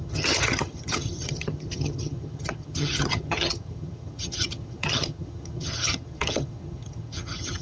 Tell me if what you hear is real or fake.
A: fake